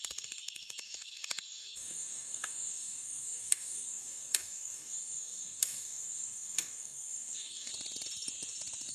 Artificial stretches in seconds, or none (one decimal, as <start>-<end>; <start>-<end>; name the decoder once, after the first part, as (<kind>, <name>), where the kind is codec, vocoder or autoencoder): 0.0-7.7 (codec, DAC)